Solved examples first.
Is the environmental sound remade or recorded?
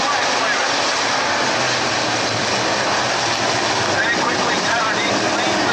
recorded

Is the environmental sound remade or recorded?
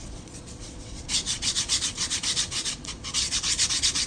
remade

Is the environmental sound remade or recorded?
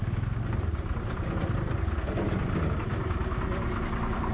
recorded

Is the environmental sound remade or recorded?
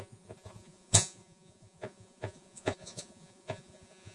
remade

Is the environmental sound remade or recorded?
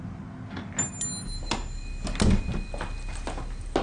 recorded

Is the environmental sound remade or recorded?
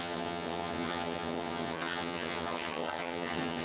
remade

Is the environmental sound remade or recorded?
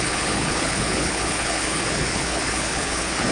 remade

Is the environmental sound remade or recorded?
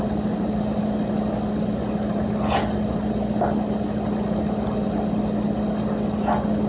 recorded